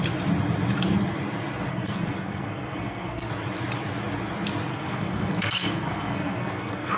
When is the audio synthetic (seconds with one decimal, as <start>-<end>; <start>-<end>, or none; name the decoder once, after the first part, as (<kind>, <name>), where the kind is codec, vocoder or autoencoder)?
1.7-3.3 (codec, SNAC); 4.7-7.0